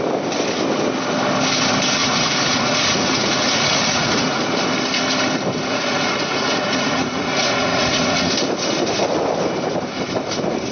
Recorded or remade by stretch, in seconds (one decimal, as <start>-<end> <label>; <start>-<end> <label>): 0.0-2.0 recorded; 2.0-4.4 remade; 4.4-5.7 recorded; 5.7-8.3 remade; 8.3-10.7 recorded